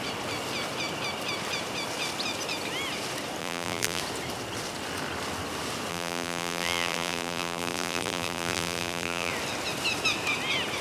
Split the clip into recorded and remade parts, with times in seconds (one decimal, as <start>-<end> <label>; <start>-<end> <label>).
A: 0.0-3.4 recorded; 3.4-4.0 remade; 4.0-5.9 recorded; 5.9-9.3 remade; 9.3-10.8 recorded